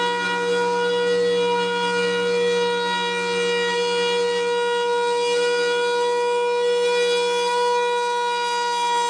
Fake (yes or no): no